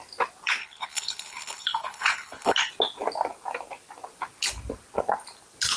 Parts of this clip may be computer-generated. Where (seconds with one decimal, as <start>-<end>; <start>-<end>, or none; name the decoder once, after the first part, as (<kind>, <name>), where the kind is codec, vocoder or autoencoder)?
0.6-2.7 (codec, HILCodec)